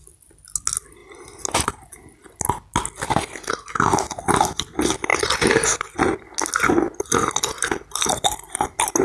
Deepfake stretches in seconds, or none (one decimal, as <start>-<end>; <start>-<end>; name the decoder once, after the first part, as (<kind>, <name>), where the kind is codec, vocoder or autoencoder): none

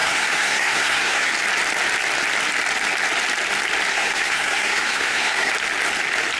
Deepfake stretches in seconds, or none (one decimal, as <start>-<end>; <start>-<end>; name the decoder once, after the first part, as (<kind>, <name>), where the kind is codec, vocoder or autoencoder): 0.0-1.3 (codec, SNAC); 3.9-5.5

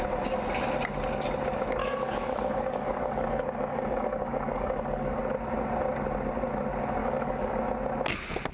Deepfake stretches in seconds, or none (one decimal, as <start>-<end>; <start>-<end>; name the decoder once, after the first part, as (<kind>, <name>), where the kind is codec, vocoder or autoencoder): 1.8-5.2 (codec, DAC); 7.0-7.6

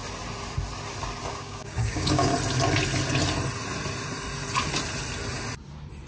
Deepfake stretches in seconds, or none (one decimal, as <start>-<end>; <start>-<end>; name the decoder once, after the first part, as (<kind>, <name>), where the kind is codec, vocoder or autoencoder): 1.3-2.3 (codec, DAC)

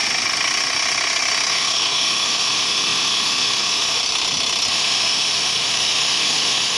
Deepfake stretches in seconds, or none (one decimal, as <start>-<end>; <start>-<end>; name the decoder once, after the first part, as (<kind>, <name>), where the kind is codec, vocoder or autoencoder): 1.5-4.0 (autoencoder, DAC-VAE); 4.7-6.8